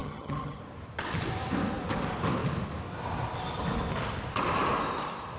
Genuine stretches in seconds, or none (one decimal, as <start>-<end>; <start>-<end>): 0.6-5.4

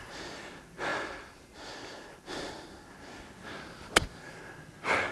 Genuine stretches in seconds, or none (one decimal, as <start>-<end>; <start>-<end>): 0.0-5.1

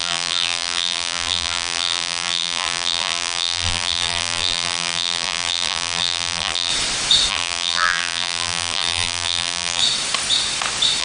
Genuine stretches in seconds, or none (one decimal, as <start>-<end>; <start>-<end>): 6.7-7.3; 9.8-11.0

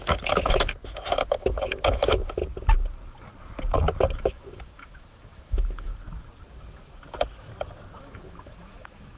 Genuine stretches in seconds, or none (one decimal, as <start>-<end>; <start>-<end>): 2.4-4.2; 5.9-8.0

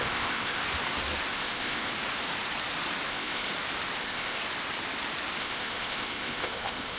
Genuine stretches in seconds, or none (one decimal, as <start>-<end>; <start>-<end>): 0.6-1.3; 1.9-3.1; 3.5-4.0; 4.4-5.4

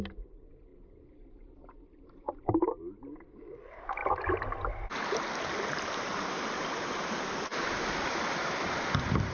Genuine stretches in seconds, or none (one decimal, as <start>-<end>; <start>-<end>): 0.0-9.3

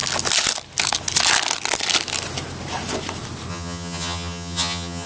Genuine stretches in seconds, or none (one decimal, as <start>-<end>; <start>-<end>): 0.0-3.5

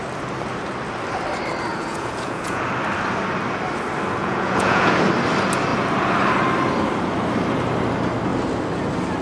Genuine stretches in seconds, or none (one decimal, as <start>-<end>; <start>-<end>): 0.0-1.7; 2.6-4.2; 5.0-9.2